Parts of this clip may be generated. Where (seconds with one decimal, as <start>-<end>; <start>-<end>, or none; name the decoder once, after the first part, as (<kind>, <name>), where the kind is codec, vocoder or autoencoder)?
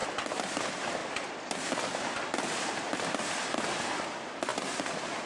0.0-0.6 (vocoder, BigVGAN v2); 1.0-1.9